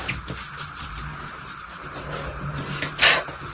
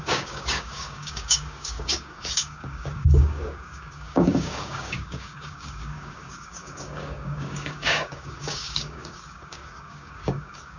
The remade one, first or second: second